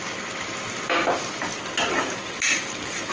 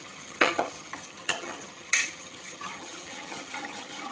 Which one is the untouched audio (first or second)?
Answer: first